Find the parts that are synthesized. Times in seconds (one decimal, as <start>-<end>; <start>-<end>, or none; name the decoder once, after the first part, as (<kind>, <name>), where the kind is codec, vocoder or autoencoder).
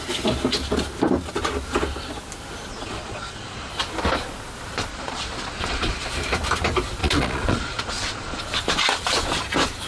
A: 2.7-3.7 (vocoder, Vocos); 4.9-6.1; 7.0-8.4